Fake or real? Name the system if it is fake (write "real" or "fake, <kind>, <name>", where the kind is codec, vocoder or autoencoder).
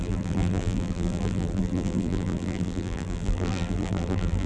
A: fake, vocoder, BigVGAN v2